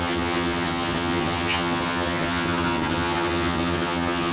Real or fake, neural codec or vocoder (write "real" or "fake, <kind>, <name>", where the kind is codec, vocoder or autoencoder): fake, vocoder, HiFi-GAN